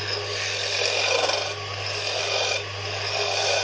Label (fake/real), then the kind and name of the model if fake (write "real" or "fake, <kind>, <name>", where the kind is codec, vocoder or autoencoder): real